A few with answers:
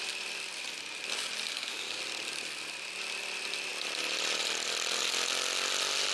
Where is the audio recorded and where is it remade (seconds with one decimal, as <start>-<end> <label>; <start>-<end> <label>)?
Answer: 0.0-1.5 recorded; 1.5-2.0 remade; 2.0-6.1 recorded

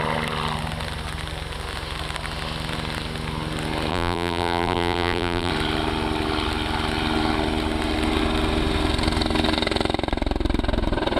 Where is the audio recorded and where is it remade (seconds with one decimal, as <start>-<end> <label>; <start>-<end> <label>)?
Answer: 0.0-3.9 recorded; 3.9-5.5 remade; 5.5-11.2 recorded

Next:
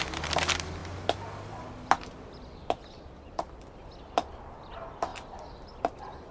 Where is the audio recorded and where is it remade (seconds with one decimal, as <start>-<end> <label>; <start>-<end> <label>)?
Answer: 0.0-6.3 recorded

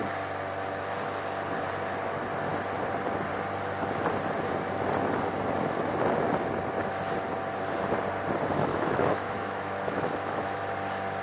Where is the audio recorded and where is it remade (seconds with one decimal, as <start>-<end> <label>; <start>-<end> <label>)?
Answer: 0.0-8.7 recorded; 8.7-10.6 remade; 10.6-11.2 recorded

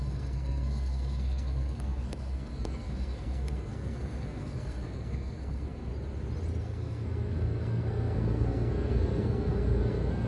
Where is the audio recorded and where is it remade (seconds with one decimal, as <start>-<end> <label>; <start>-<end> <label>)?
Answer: 0.0-5.9 remade; 5.9-6.6 recorded; 6.6-10.3 remade